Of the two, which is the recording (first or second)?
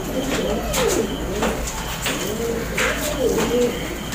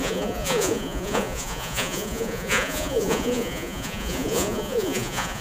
first